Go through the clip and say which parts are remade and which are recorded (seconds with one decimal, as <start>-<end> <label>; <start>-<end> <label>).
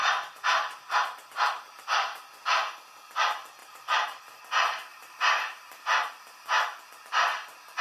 0.0-2.3 remade; 2.3-3.6 recorded; 3.6-4.4 remade; 4.4-4.9 recorded; 4.9-6.1 remade; 6.1-7.8 recorded